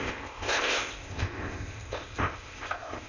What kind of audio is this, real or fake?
fake